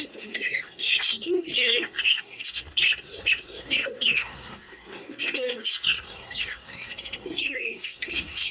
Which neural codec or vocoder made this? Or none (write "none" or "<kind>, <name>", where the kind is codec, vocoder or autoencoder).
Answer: codec, SNAC